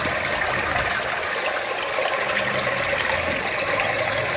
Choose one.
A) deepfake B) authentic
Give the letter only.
B